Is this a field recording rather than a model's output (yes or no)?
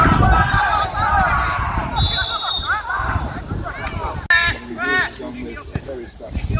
yes